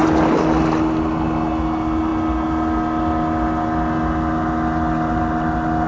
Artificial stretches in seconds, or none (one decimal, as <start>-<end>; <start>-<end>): none